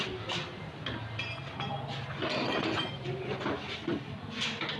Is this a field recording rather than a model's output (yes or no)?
yes